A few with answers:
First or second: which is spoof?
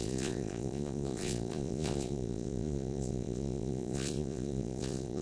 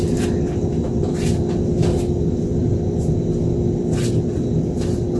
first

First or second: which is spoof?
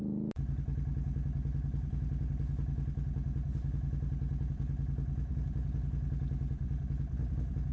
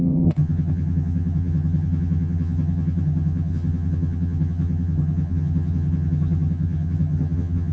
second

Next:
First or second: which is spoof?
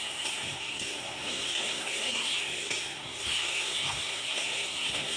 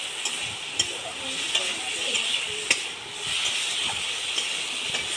first